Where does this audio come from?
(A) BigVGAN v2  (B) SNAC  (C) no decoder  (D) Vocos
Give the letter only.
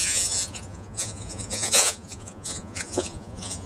D